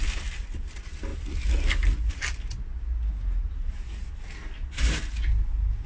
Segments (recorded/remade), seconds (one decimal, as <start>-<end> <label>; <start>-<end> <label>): 0.0-5.9 recorded